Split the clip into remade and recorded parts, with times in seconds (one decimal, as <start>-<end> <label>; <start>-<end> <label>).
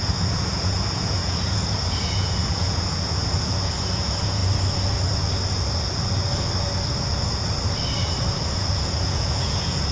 0.0-4.4 remade; 4.4-8.3 recorded; 8.3-9.9 remade